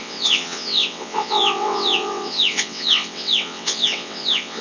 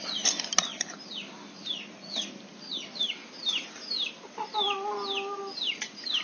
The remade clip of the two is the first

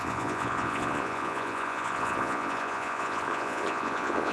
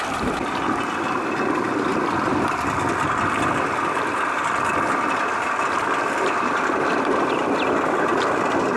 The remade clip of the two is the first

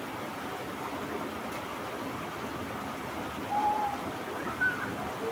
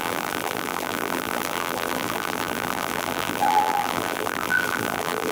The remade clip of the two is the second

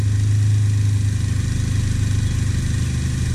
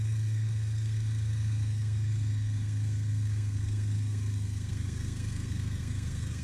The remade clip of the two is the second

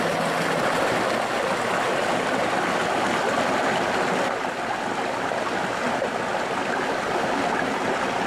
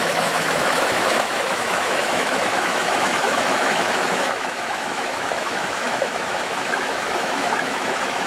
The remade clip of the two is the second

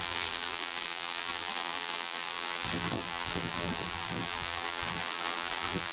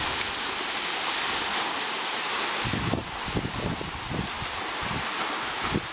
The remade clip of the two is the first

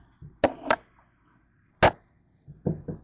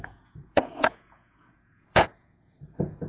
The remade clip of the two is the second